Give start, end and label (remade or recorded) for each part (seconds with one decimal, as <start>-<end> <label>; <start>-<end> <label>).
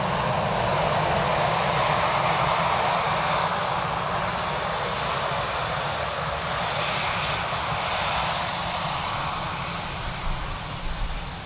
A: 0.0-3.5 recorded; 3.5-4.5 remade; 4.5-8.6 recorded; 8.6-9.3 remade; 9.3-11.5 recorded